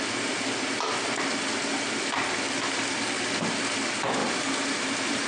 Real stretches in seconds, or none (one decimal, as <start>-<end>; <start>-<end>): 0.0-4.2